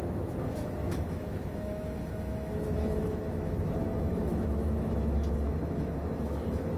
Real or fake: fake